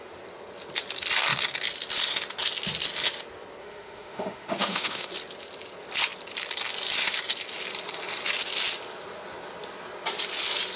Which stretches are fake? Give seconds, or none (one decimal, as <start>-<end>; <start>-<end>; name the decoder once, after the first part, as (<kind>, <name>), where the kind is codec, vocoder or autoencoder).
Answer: 3.6-5.1 (autoencoder, DAC-VAE)